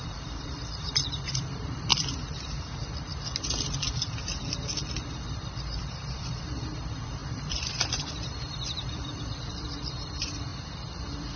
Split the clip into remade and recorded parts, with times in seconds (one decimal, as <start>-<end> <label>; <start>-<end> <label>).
0.0-1.9 remade; 1.9-5.1 recorded; 5.1-10.5 remade; 10.5-11.4 recorded